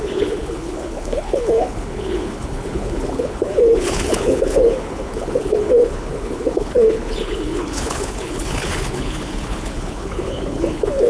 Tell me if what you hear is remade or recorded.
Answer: remade